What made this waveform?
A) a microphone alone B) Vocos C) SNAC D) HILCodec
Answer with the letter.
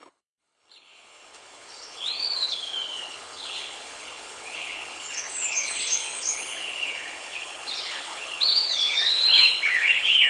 D